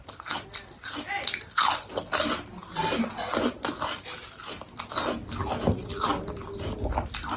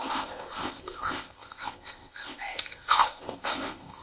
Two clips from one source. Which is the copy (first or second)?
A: second